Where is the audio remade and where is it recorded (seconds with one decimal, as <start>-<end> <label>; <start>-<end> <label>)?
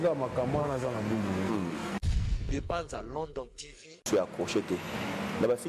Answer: 0.0-0.6 recorded; 0.6-4.0 remade; 4.0-5.7 recorded